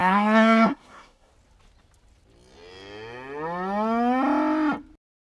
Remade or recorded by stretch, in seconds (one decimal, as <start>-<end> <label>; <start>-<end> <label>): 0.0-1.3 remade; 1.3-5.3 recorded